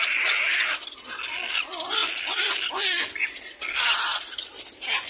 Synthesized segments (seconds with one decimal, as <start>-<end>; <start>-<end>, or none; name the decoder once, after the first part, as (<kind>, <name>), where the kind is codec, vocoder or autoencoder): none